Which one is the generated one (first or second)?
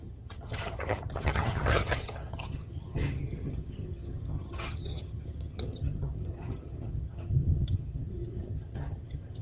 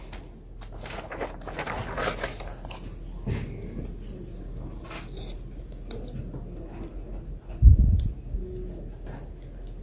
first